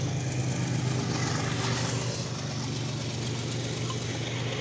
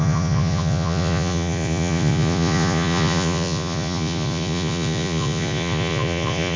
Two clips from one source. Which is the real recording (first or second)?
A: first